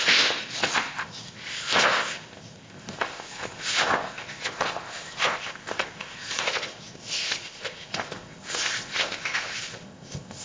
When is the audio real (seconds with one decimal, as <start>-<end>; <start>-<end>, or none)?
none